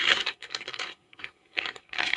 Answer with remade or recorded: remade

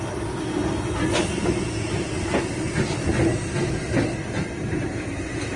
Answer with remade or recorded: recorded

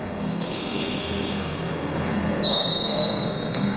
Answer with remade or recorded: remade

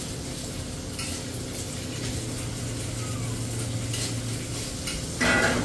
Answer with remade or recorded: recorded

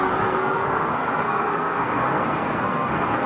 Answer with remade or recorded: remade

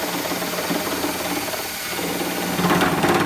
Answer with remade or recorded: recorded